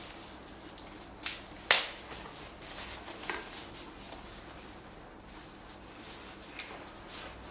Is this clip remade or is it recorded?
recorded